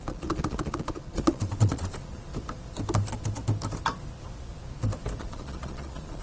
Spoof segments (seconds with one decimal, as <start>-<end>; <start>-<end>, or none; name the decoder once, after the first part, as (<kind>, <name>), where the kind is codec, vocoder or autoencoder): 0.0-2.3 (vocoder, Vocos); 5.2-6.2